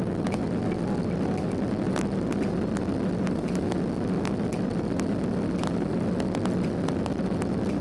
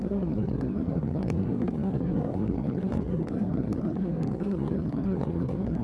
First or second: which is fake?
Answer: second